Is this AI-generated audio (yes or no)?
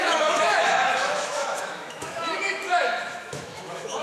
yes